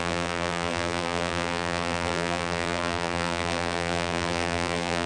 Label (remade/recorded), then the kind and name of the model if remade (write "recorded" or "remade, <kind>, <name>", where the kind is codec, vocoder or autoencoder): remade, vocoder, BigVGAN v2